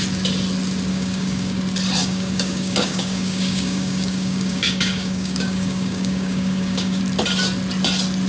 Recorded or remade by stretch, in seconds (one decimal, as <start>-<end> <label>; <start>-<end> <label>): 0.0-0.9 recorded; 0.9-1.6 remade; 1.6-2.0 recorded; 2.0-7.0 remade; 7.0-8.3 recorded